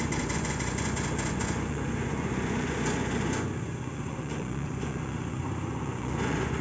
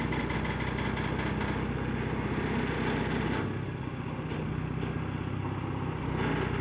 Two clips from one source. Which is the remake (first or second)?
first